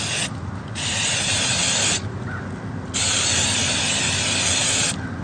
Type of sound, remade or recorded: recorded